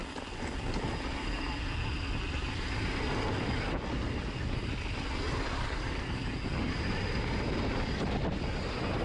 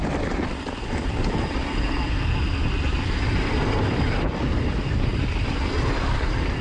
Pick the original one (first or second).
first